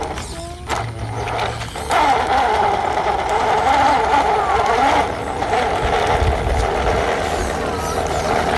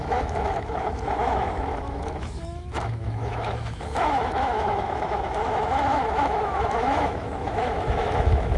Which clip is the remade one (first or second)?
second